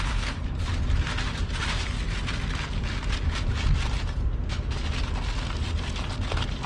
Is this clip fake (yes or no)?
no